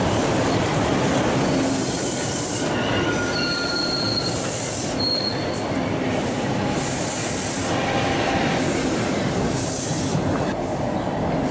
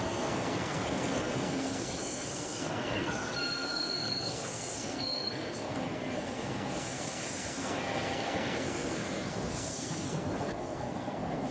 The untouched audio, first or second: first